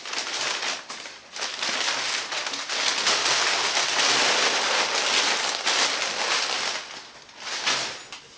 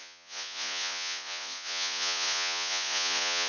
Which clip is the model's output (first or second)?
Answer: second